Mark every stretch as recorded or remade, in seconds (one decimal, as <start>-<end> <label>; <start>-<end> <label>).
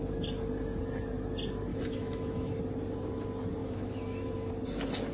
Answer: 0.0-1.7 recorded; 1.7-2.6 remade; 2.6-3.6 recorded; 3.6-4.5 remade; 4.5-5.1 recorded